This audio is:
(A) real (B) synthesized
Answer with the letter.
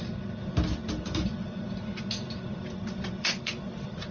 A